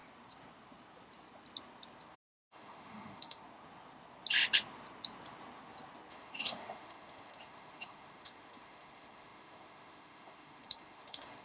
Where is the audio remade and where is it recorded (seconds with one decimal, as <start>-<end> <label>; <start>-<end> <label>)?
0.0-2.5 recorded; 2.5-3.4 remade; 3.4-6.1 recorded; 6.1-11.4 remade